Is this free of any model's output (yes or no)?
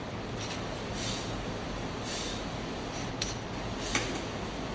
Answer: yes